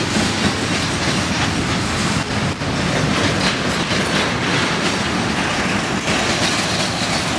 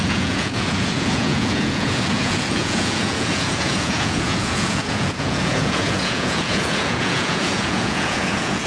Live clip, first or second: first